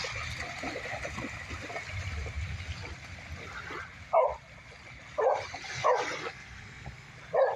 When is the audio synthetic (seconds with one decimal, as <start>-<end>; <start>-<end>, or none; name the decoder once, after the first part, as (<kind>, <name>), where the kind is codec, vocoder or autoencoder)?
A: 6.2-7.1 (codec, SNAC)